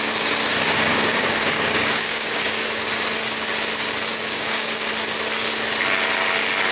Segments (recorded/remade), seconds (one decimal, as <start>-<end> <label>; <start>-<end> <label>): 0.0-0.9 recorded; 0.9-2.5 remade; 2.5-4.1 recorded; 4.1-4.9 remade; 4.9-6.7 recorded